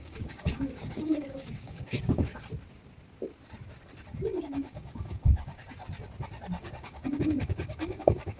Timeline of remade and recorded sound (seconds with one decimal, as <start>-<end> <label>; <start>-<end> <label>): 0.0-2.3 remade; 2.3-4.4 recorded; 4.4-5.6 remade; 5.6-6.6 recorded; 6.6-8.4 remade

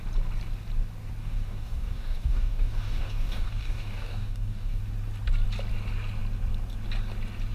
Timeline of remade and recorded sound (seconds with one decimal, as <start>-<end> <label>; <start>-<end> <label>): 0.0-1.2 recorded; 1.2-4.8 remade; 4.8-7.5 recorded

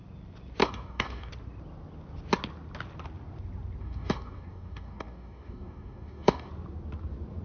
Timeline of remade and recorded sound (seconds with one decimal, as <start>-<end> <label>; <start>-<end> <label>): 0.0-0.6 recorded; 0.6-1.3 remade; 1.3-3.8 recorded; 3.8-6.5 remade; 6.5-7.4 recorded

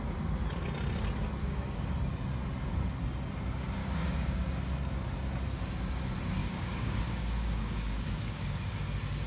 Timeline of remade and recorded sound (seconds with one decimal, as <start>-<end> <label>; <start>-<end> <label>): 0.0-1.4 recorded; 1.4-1.9 remade; 1.9-3.8 recorded; 3.8-4.6 remade; 4.6-6.4 recorded; 6.4-8.6 remade; 8.6-9.3 recorded

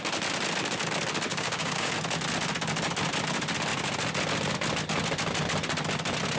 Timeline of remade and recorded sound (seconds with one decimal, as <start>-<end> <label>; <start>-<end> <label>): 0.0-1.3 recorded; 1.3-1.9 remade; 1.9-6.4 recorded